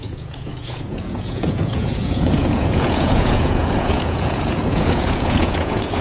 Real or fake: fake